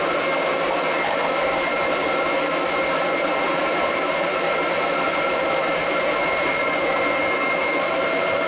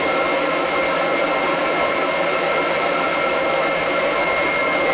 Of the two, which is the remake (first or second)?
first